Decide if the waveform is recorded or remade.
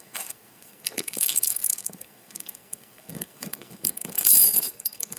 remade